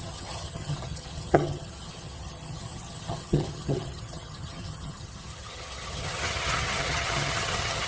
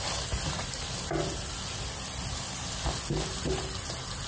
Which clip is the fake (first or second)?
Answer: first